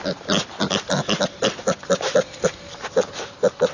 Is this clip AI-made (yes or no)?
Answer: no